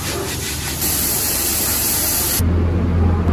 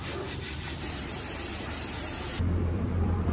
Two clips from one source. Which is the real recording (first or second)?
first